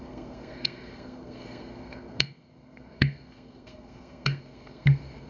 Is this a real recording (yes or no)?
no